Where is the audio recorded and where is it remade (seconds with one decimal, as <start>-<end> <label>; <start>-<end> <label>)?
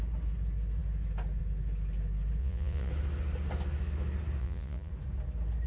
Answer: 0.0-2.4 recorded; 2.4-2.9 remade; 2.9-4.4 recorded; 4.4-4.9 remade; 4.9-5.7 recorded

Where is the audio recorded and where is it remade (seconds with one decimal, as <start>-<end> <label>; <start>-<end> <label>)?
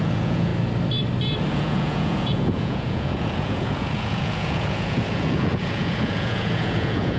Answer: 0.0-0.5 remade; 0.5-1.5 recorded; 1.5-7.2 remade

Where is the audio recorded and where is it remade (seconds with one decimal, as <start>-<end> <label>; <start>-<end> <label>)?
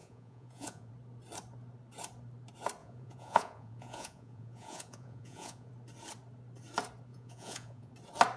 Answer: 0.0-0.9 remade; 0.9-2.8 recorded; 2.8-5.7 remade; 5.7-7.1 recorded; 7.1-7.9 remade; 7.9-8.4 recorded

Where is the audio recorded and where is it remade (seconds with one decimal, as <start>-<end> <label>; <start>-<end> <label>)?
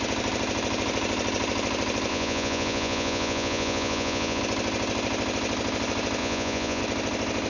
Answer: 0.0-2.1 recorded; 2.1-4.4 remade; 4.4-6.2 recorded; 6.2-6.8 remade; 6.8-7.5 recorded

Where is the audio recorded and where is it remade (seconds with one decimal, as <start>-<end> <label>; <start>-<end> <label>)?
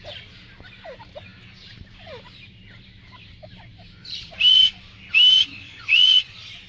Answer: 0.0-5.6 recorded; 5.6-6.3 remade; 6.3-6.7 recorded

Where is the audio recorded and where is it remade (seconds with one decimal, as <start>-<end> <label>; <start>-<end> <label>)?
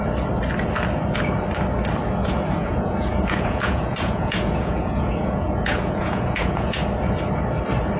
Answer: 0.0-2.2 recorded; 2.2-6.8 remade; 6.8-8.0 recorded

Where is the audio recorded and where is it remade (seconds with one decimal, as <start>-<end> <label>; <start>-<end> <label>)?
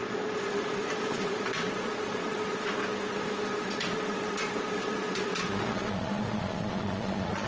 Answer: 0.0-2.8 remade; 2.8-3.6 recorded; 3.6-7.5 remade